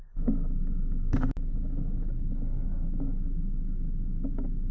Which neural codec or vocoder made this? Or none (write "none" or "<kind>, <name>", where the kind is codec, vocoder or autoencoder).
none